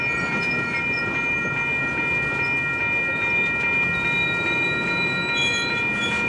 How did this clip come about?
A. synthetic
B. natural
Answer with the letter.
B